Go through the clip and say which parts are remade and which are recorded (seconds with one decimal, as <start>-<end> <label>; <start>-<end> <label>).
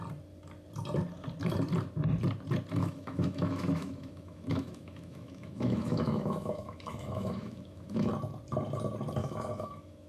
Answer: 0.0-2.8 recorded; 2.8-8.1 remade; 8.1-9.2 recorded; 9.2-10.1 remade